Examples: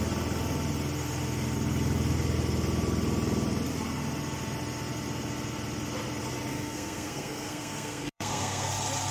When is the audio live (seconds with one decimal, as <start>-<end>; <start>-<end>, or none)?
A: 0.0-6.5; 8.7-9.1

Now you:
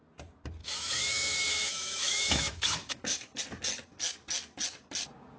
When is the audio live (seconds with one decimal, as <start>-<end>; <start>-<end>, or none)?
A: 0.0-0.6; 3.4-5.4

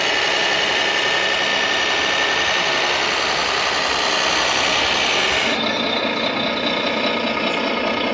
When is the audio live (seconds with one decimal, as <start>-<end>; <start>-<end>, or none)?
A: 0.0-8.1

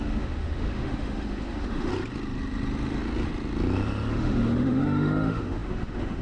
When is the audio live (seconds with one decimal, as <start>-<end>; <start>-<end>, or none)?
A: 1.9-4.1